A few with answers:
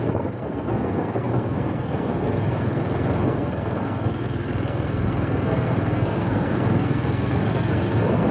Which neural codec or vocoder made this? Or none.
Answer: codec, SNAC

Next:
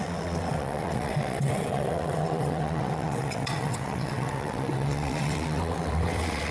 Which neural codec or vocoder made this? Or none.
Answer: vocoder, WaveNeXt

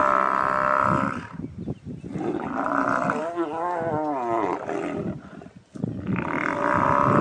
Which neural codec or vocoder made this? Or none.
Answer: none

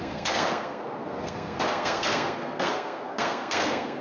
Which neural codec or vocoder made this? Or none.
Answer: codec, SNAC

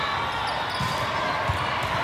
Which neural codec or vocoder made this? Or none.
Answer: none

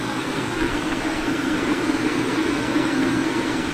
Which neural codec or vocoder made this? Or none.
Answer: codec, SNAC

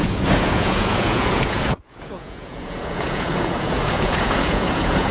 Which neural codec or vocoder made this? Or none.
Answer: vocoder, Vocos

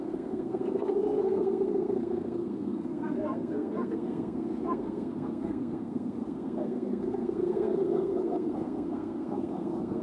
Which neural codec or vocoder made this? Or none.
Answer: codec, SNAC